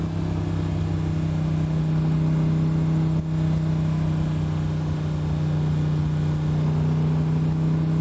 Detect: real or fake real